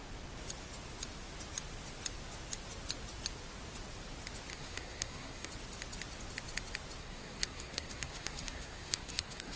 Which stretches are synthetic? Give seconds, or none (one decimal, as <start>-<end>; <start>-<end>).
4.5-5.5; 7.0-9.6